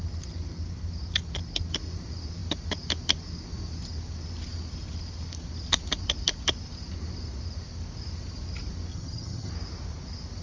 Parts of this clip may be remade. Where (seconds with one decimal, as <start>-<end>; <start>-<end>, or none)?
8.9-9.5